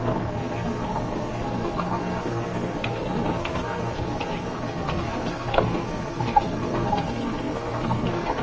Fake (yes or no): yes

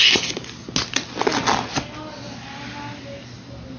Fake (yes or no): no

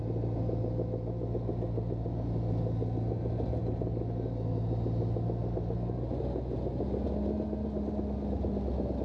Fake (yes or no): no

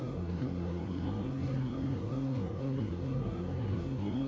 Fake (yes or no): yes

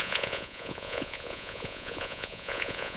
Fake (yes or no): yes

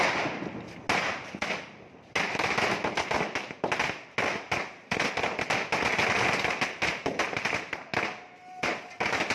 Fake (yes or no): no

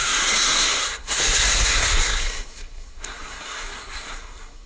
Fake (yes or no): yes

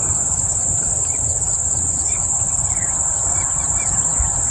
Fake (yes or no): yes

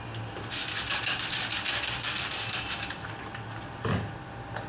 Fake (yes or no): no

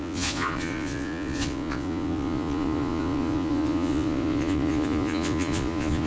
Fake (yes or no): yes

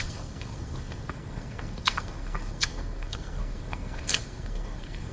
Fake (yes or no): yes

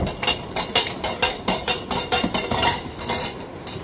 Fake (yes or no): yes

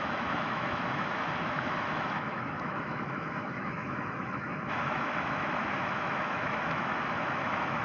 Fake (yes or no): yes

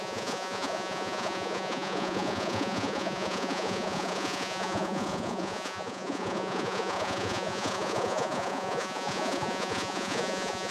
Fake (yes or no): yes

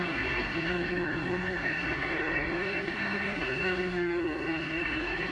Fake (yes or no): yes